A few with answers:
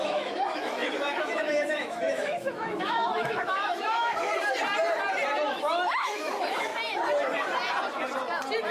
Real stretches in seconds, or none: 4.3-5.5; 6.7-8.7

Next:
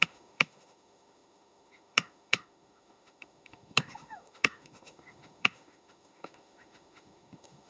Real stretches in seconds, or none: none

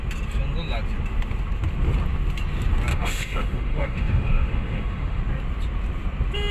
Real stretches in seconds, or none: 0.0-2.9; 5.2-6.5